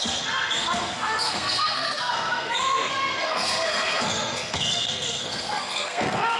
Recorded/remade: remade